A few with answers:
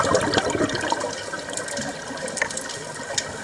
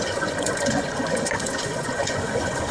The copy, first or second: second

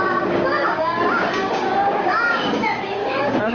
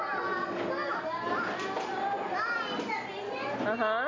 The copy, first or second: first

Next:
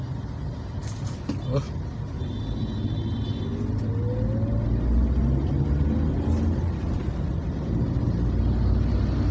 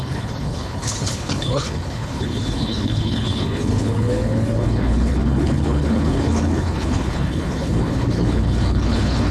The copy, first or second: second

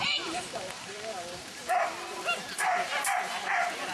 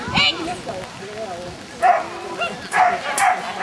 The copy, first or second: first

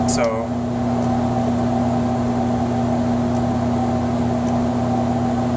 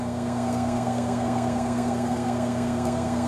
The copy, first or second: second